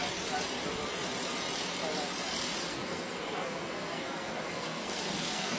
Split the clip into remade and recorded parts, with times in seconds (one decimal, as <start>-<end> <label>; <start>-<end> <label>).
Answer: 0.0-2.6 recorded; 2.6-5.6 remade